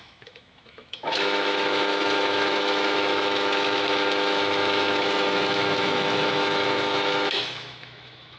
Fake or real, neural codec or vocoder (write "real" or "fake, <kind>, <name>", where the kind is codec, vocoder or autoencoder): fake, autoencoder, DAC-VAE